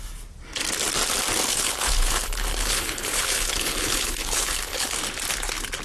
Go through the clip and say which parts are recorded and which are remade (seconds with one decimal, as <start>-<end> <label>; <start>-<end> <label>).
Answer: 0.0-1.5 recorded; 1.5-4.9 remade; 4.9-5.8 recorded